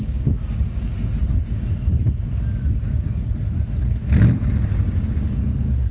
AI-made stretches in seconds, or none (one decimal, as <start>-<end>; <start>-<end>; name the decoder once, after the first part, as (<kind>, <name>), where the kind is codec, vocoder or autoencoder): 0.0-1.6 (codec, DAC)